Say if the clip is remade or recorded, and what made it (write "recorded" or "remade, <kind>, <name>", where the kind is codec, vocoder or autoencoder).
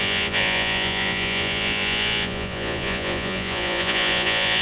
remade, vocoder, Vocos